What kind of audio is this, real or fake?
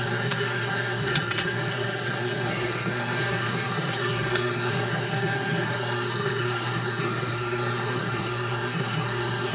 fake